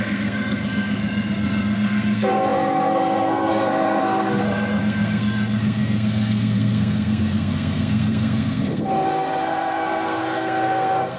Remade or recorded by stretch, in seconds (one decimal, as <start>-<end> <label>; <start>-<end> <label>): 0.0-11.2 remade